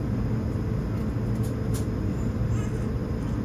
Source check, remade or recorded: recorded